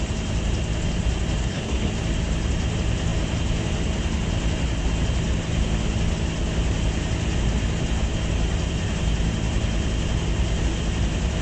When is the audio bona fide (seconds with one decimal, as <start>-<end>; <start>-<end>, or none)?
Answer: 0.0-1.4; 1.9-11.4